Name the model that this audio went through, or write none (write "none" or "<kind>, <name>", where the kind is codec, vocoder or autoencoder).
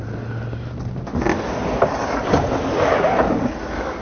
none